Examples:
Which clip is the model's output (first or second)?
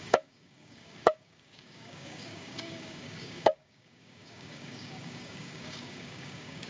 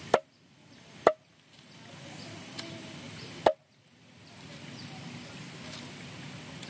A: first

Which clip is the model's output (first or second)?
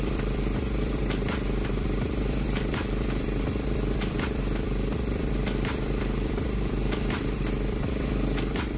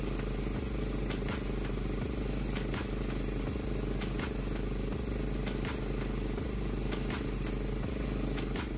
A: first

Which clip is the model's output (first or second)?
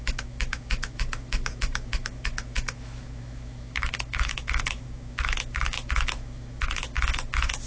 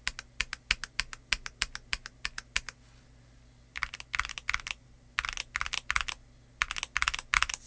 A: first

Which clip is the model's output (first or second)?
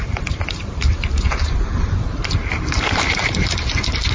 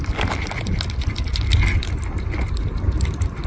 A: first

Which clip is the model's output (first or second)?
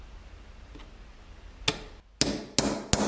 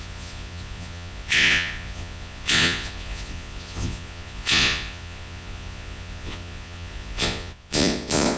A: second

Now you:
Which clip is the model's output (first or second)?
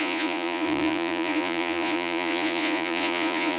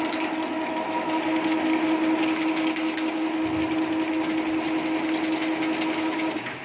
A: first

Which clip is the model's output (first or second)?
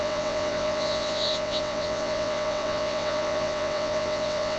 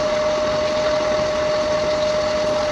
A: first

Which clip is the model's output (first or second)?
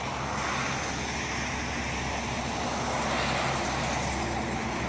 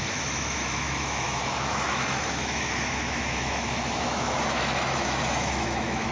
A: second